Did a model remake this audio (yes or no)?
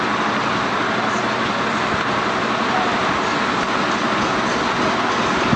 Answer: no